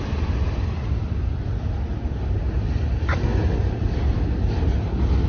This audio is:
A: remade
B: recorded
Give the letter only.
B